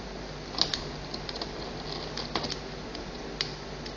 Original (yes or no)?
yes